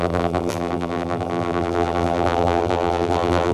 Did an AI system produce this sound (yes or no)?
yes